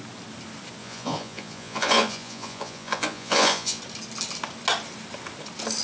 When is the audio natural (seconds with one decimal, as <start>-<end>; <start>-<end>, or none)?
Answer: 0.0-0.8; 3.8-5.8